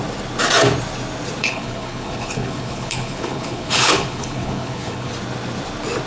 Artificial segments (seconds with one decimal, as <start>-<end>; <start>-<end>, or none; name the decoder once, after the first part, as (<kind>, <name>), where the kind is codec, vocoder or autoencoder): 1.4-5.1 (codec, HILCodec)